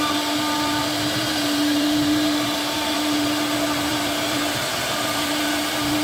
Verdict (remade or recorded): remade